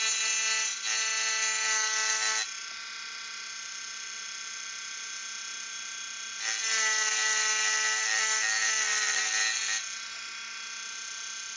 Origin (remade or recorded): recorded